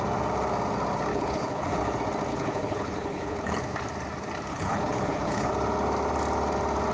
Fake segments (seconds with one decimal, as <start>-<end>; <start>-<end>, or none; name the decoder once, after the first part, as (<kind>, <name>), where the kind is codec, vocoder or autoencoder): 1.1-1.8 (codec, HILCodec); 2.3-3.6; 4.5-5.5